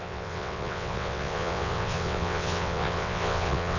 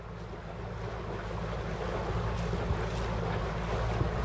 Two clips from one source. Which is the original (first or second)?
second